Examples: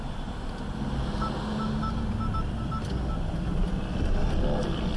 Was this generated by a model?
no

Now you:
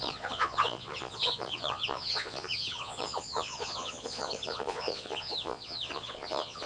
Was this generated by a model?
yes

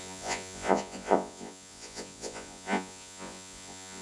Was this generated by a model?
yes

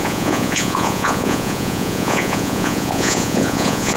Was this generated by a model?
yes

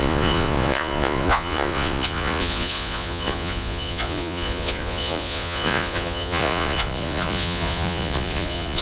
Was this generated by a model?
yes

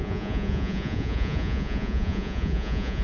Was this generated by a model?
yes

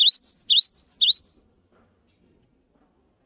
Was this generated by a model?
no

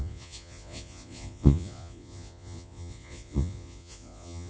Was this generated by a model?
yes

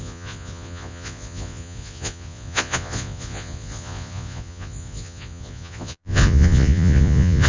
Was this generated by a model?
yes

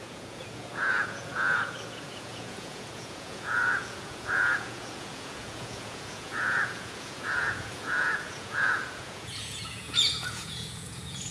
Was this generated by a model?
yes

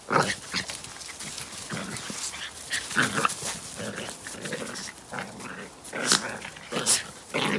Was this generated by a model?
no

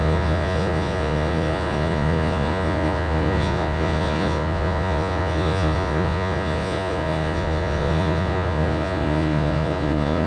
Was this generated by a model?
yes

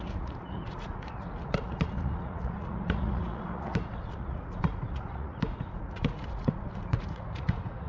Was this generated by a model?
yes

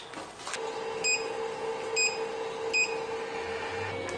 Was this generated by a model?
no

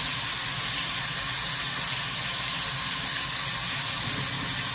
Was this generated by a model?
no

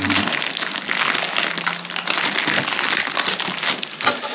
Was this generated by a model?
no